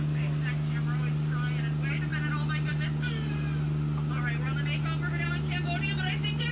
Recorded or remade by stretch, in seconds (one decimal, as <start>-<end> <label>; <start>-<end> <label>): 0.0-6.5 recorded

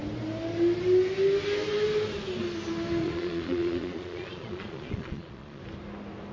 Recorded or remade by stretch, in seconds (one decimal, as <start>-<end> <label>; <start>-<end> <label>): 0.0-3.0 recorded; 3.0-5.6 remade; 5.6-6.3 recorded

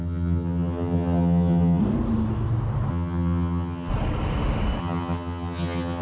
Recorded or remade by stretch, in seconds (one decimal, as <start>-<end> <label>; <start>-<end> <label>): 0.0-1.8 remade; 1.8-2.9 recorded; 2.9-3.9 remade; 3.9-4.8 recorded; 4.8-6.0 remade

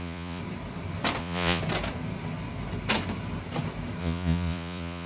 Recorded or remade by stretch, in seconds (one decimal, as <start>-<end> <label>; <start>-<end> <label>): 0.0-0.4 remade; 0.4-1.2 recorded; 1.2-1.6 remade; 1.6-4.0 recorded; 4.0-5.1 remade

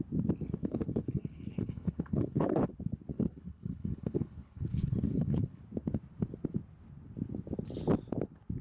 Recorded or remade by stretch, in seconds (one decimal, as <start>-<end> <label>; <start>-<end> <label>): 0.0-0.6 recorded; 0.6-2.7 remade; 2.7-3.1 recorded; 3.1-5.6 remade; 5.6-8.6 recorded

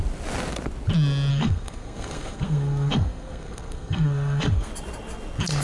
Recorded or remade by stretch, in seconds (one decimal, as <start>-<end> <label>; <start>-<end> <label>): 0.0-1.3 recorded; 1.3-4.7 remade; 4.7-5.6 recorded

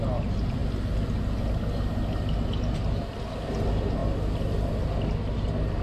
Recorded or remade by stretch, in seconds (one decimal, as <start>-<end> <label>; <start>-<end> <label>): 0.0-5.8 recorded

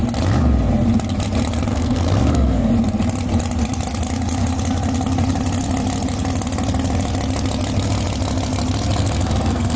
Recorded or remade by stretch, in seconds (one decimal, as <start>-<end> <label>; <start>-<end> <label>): 0.0-1.7 recorded; 1.7-2.7 remade; 2.7-9.0 recorded; 9.0-9.8 remade